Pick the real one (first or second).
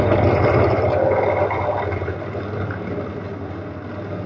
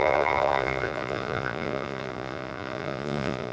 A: first